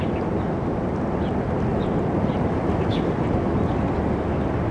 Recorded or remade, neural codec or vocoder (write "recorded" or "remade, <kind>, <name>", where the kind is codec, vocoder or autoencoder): recorded